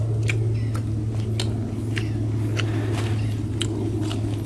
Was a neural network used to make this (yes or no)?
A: no